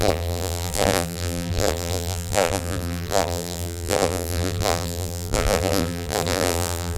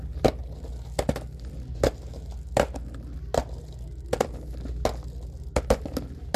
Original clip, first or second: second